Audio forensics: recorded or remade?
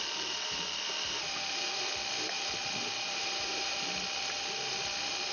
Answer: recorded